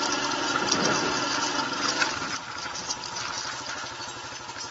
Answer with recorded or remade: recorded